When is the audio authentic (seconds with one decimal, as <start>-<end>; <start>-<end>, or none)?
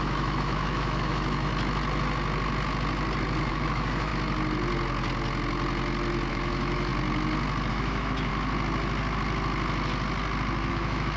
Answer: 1.5-3.5; 4.1-6.3; 6.9-7.7; 8.3-10.7